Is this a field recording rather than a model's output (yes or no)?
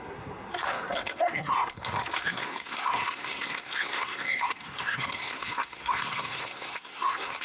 no